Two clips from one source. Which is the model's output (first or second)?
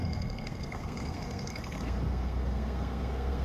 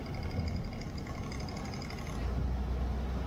first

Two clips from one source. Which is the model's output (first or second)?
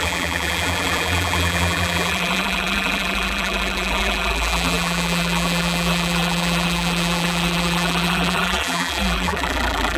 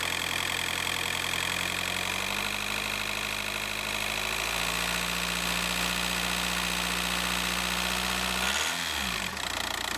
first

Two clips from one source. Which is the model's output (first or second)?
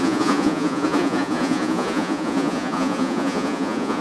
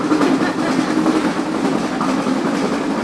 first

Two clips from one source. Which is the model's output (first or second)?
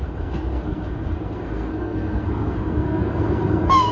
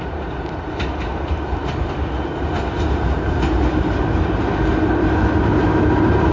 first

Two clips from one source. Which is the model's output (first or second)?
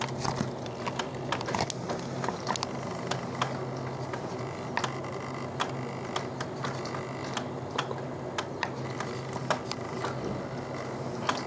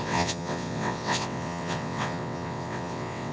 second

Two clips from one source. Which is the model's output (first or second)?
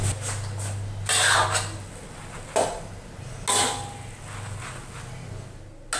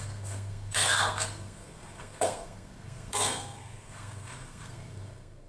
second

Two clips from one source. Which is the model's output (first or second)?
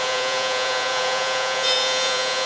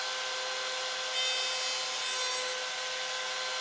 first